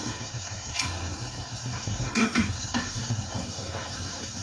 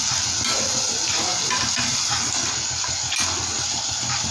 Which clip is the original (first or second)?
second